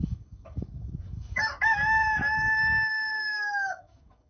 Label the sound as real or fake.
fake